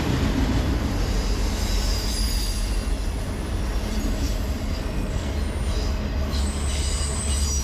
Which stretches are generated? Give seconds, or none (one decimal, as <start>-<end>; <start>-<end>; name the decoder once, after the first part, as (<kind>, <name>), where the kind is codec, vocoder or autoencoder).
4.7-5.3 (codec, SNAC)